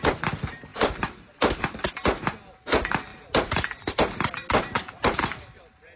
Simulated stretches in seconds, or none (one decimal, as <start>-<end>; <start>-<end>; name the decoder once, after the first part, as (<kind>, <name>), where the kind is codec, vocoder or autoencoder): 0.7-1.4 (vocoder, BigVGAN v2); 3.1-6.0